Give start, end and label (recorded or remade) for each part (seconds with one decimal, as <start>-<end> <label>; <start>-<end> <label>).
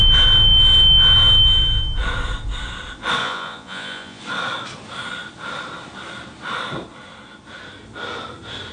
0.0-3.2 recorded; 3.2-4.2 remade; 4.2-8.7 recorded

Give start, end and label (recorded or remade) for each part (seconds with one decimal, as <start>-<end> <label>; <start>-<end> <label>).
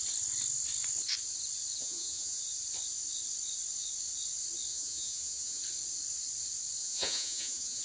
0.0-1.8 recorded; 1.8-2.4 remade; 2.4-4.7 recorded; 4.7-5.6 remade; 5.6-6.8 recorded; 6.8-7.8 remade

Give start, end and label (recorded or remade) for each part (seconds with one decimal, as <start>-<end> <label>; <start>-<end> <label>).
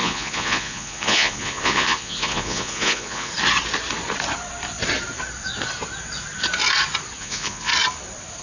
0.0-3.3 remade; 3.3-7.2 recorded; 7.2-7.7 remade; 7.7-8.4 recorded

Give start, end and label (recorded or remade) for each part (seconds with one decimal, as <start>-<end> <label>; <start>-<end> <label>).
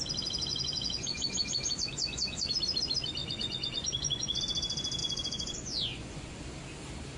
0.0-0.5 recorded; 0.5-2.6 remade; 2.6-3.2 recorded; 3.2-4.4 remade; 4.4-5.0 recorded; 5.0-6.4 remade; 6.4-7.2 recorded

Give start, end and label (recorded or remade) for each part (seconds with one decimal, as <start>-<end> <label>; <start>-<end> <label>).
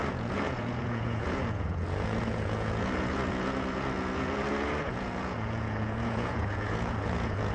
0.0-7.5 remade